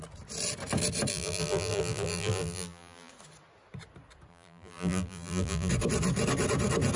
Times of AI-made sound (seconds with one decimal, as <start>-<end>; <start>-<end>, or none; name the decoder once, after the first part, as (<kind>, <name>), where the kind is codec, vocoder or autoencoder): 1.1-3.1 (vocoder, BigVGAN v2); 4.3-5.7